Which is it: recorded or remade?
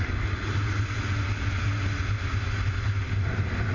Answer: recorded